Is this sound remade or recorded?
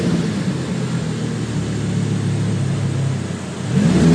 recorded